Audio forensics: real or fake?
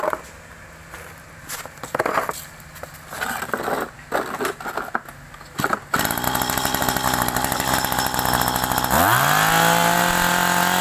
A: real